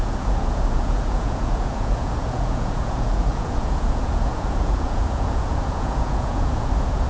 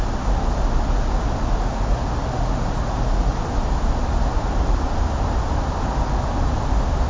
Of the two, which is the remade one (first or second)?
first